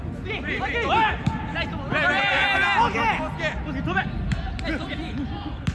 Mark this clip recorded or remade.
recorded